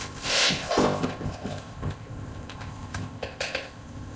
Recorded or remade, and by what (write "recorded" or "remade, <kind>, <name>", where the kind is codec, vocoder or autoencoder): remade, codec, ZipCodec